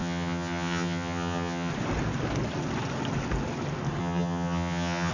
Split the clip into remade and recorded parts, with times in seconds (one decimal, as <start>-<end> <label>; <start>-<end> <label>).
0.0-1.7 remade; 1.7-4.0 recorded; 4.0-5.1 remade